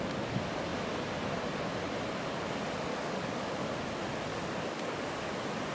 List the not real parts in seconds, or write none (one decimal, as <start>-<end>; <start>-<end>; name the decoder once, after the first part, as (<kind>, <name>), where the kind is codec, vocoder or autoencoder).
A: 2.9-3.5 (codec, DAC); 4.3-5.0